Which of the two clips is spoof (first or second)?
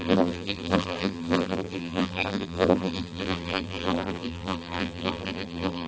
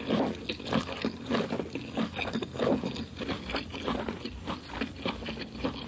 first